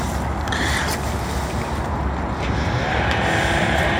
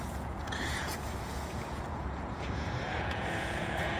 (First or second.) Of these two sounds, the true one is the first